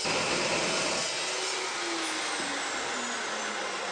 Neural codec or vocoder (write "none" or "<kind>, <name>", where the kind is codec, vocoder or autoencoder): none